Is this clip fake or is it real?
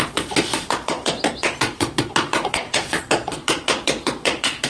fake